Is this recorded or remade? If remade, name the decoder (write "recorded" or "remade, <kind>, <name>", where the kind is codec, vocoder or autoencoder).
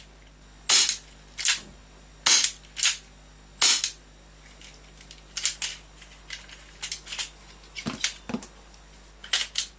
recorded